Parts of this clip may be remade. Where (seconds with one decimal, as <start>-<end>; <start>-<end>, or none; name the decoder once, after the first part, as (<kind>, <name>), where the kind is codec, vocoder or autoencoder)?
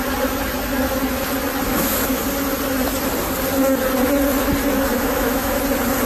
1.7-2.2 (autoencoder, DAC-VAE); 4.9-5.6